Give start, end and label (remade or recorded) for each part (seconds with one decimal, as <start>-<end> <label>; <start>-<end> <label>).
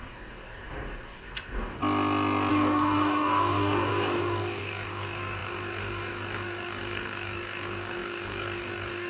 0.0-1.8 remade; 1.8-2.5 recorded; 2.5-9.1 remade